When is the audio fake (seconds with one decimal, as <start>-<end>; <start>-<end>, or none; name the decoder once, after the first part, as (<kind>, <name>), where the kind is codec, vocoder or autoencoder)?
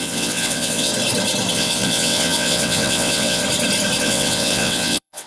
0.0-0.9 (vocoder, WaveNeXt); 1.5-3.4; 4.0-5.3